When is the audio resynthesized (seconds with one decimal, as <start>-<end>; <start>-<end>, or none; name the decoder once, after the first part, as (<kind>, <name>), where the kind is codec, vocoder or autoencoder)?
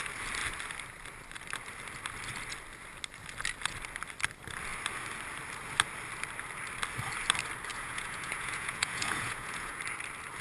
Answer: 7.7-9.8 (vocoder, Vocos)